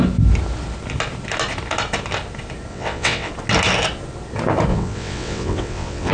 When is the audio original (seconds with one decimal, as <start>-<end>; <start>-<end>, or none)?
0.0-2.7; 3.3-4.7